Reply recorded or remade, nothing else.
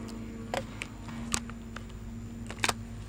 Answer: recorded